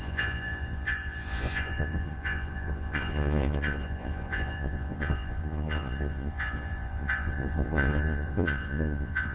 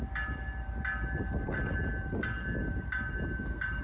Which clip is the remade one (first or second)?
first